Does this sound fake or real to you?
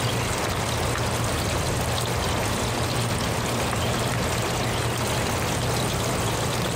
real